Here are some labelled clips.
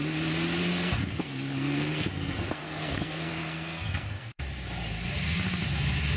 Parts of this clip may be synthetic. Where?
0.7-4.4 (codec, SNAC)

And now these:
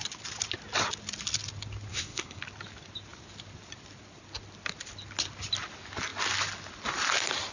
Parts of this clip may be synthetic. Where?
1.9-2.4 (codec, SNAC)

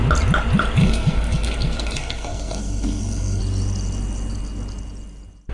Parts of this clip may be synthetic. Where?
0.8-3.4 (codec, SNAC)